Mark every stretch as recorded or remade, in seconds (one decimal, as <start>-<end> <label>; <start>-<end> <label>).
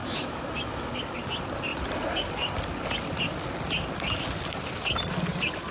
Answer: 0.0-0.9 remade; 0.9-5.7 recorded